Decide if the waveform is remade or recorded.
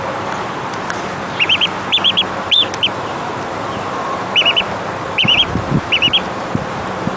remade